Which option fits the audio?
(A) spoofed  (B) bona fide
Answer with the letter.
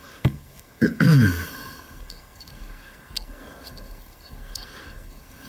A